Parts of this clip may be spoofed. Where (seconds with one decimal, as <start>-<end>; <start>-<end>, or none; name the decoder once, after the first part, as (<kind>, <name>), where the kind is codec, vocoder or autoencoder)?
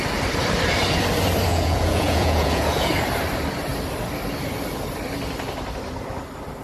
1.5-2.9 (vocoder, Vocos)